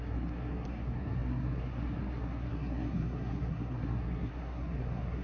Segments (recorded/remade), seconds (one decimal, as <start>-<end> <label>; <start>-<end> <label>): 0.0-5.2 remade